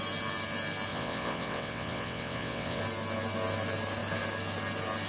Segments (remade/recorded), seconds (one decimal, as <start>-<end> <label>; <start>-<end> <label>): 0.0-0.9 recorded; 0.9-2.8 remade; 2.8-5.1 recorded